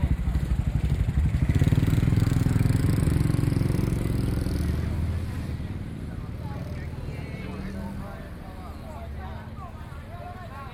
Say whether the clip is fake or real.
real